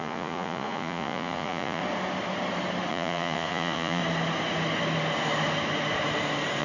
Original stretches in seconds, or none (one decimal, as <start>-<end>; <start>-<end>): 1.8-2.9; 4.0-6.6